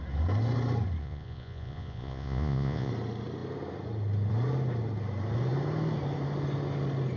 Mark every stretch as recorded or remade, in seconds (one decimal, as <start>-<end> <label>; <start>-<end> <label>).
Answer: 0.0-1.0 recorded; 1.0-2.9 remade; 2.9-7.2 recorded